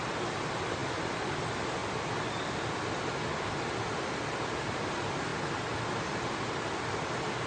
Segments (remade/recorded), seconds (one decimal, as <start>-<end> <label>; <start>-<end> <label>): 0.0-7.5 recorded